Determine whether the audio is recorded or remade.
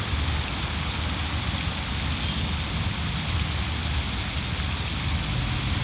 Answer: recorded